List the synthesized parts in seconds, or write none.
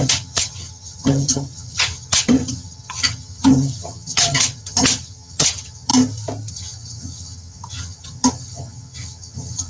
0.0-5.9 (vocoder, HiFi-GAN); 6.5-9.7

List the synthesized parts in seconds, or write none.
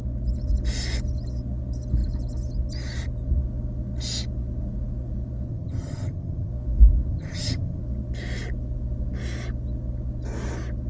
5.5-6.5 (vocoder, HiFi-GAN); 7.1-7.8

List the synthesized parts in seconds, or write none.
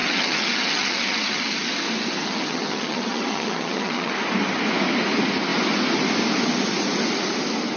0.0-1.7 (vocoder, HiFi-GAN); 2.2-4.1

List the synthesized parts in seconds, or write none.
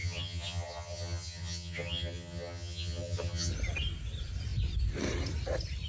0.0-3.5 (vocoder, HiFi-GAN)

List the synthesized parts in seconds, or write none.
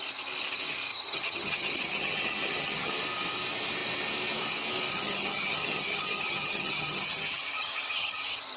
0.9-2.9 (vocoder, HiFi-GAN); 4.9-8.2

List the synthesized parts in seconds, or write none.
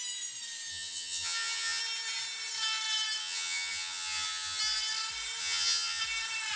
0.7-1.8 (vocoder, HiFi-GAN); 3.2-4.6; 5.4-6.0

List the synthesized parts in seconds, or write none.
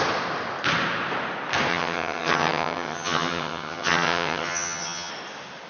1.7-5.1 (vocoder, HiFi-GAN)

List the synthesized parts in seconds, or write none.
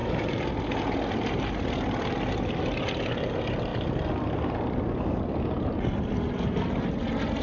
none